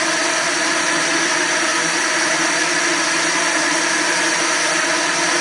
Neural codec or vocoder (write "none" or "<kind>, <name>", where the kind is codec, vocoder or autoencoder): none